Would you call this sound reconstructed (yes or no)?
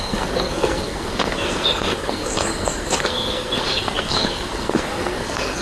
yes